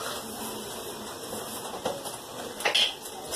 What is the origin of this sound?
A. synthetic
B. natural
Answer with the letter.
B